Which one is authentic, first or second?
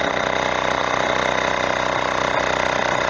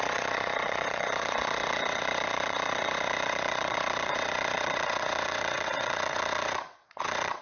first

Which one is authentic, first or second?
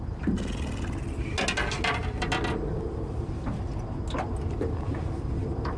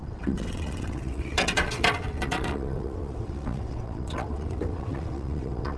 first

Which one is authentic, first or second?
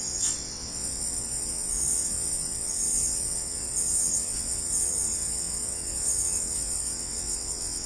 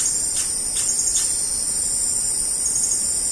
second